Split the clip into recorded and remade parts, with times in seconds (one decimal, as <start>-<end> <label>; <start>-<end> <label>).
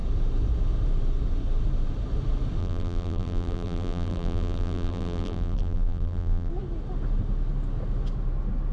0.0-2.6 recorded; 2.6-6.5 remade; 6.5-8.7 recorded